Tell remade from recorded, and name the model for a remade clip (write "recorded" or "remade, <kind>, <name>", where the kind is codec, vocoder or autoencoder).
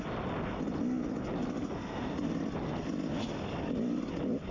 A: recorded